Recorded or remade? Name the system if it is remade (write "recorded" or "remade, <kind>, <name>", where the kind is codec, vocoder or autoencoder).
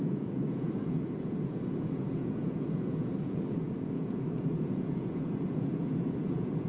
remade, vocoder, Vocos